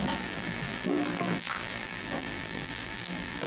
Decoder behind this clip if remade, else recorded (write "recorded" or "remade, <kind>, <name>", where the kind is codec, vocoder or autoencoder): remade, vocoder, BigVGAN v2